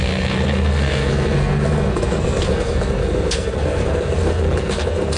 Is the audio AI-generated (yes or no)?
yes